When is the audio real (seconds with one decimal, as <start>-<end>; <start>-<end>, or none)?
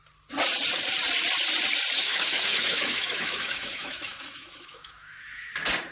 0.0-2.0; 5.5-5.9